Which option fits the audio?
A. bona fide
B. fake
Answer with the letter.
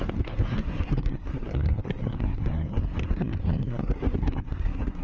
B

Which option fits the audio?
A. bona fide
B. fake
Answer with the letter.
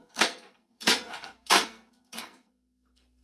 B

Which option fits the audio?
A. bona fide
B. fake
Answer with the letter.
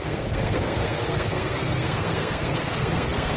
B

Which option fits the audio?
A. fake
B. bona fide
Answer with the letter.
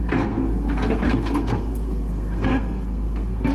A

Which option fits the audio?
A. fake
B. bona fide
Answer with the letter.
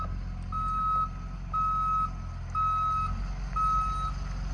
B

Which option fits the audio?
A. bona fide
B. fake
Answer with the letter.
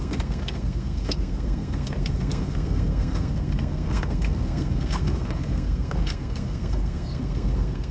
B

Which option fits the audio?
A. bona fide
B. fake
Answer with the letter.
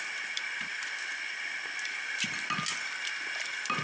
A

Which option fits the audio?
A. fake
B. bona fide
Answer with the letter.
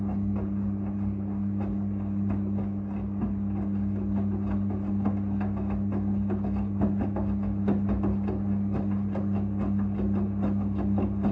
B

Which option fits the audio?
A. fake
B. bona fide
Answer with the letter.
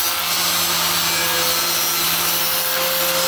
B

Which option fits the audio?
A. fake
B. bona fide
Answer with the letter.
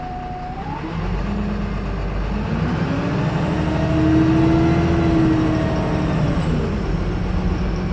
B